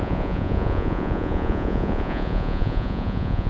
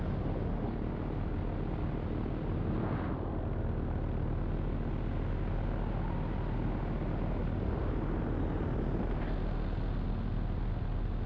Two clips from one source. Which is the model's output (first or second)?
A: first